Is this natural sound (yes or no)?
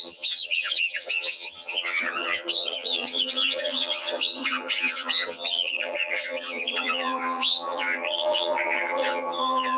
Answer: no